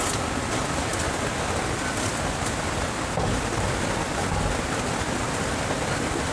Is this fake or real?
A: real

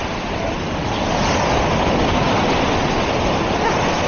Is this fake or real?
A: real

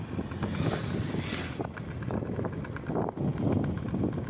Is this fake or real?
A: real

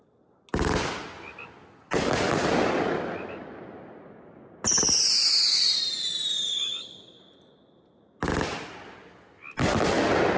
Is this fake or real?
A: real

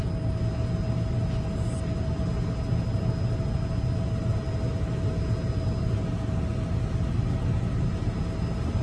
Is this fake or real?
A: real